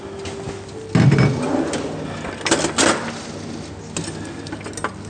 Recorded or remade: recorded